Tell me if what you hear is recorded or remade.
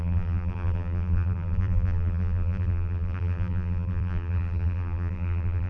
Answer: remade